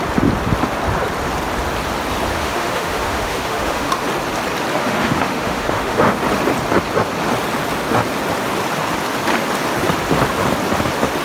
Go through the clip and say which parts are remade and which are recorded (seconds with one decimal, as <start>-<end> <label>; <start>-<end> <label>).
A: 0.0-2.3 recorded; 2.3-3.9 remade; 3.9-4.8 recorded; 4.8-6.2 remade; 6.2-11.2 recorded